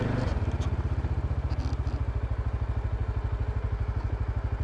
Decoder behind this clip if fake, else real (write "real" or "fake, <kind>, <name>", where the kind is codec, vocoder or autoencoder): real